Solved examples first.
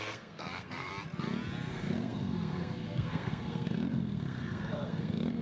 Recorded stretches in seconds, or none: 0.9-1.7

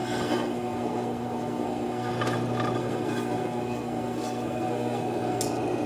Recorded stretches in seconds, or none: 2.1-2.8; 5.4-5.9

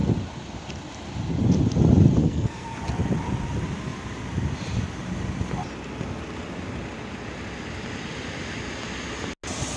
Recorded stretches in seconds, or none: 0.0-2.2; 2.8-9.8

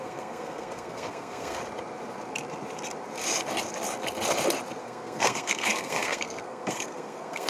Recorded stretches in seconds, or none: 1.6-4.8

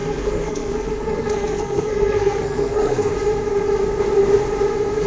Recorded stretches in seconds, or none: 3.1-5.1

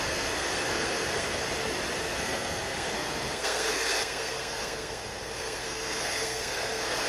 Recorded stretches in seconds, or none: 1.4-2.0